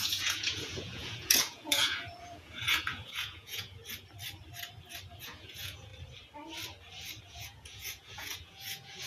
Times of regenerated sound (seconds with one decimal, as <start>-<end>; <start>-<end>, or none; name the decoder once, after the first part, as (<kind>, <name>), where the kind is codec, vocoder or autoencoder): 0.0-3.8 (vocoder, Vocos); 5.2-5.9; 7.2-9.1